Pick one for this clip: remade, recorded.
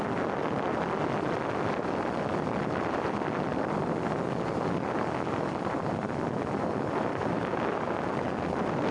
recorded